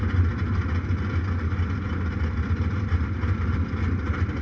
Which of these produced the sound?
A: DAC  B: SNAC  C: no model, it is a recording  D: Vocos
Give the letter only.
C